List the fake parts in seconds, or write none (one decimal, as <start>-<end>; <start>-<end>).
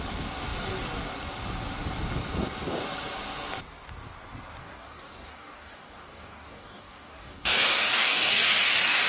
4.6-9.1